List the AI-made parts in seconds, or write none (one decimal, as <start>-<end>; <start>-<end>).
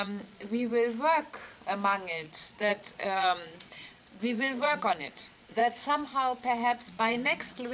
0.0-0.7; 2.1-7.7